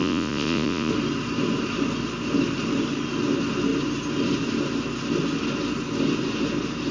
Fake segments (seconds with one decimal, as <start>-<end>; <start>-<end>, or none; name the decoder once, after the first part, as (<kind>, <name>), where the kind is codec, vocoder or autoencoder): 0.0-0.9 (vocoder, Vocos)